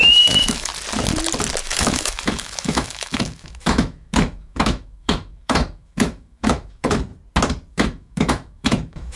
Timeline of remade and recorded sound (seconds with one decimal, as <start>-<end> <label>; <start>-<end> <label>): 0.0-0.7 remade; 0.7-1.6 recorded; 1.6-7.1 remade; 7.1-7.7 recorded; 7.7-9.2 remade

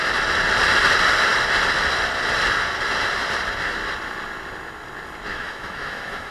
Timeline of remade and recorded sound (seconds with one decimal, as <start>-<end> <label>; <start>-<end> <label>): 0.0-5.3 recorded; 5.3-6.3 remade

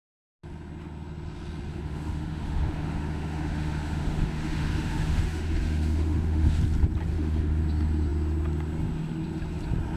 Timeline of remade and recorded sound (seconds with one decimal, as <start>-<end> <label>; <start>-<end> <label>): 0.0-1.7 recorded; 1.7-6.6 remade; 6.6-7.1 recorded; 7.1-7.6 remade; 7.6-10.0 recorded

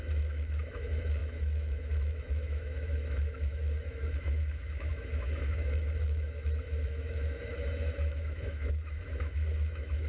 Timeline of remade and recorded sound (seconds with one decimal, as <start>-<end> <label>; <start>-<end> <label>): 0.0-10.1 remade

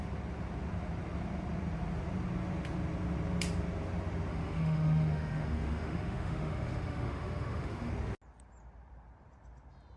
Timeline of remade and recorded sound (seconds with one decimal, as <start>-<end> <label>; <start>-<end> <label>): 0.0-4.3 recorded; 4.3-7.9 remade; 7.9-10.0 recorded

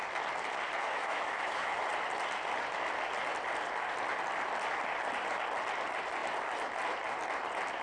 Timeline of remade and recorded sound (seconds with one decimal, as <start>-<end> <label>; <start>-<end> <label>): 0.0-0.8 recorded; 0.8-1.9 remade; 1.9-7.8 recorded

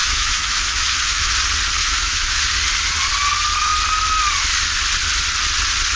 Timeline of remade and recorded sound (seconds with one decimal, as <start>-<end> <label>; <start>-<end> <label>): 0.0-1.3 remade; 1.3-1.8 recorded; 1.8-2.4 remade; 2.4-6.0 recorded